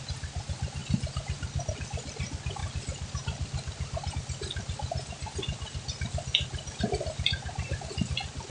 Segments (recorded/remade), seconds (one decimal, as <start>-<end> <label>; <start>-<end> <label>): 0.0-8.5 recorded